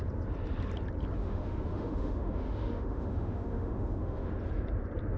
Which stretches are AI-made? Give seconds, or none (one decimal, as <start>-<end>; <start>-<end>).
1.2-4.3